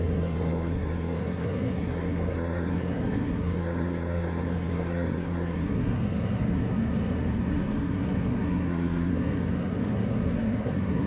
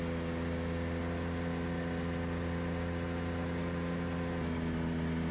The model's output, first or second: first